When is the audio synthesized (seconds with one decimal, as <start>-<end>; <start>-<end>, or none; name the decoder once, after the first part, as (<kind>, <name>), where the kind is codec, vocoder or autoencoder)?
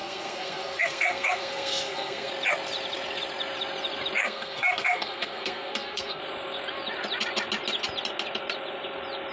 0.0-2.3 (codec, SNAC); 4.2-6.2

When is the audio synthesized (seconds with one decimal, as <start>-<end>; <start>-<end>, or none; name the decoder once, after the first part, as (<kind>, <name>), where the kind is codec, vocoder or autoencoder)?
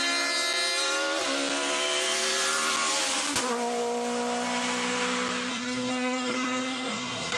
5.5-7.4 (codec, SNAC)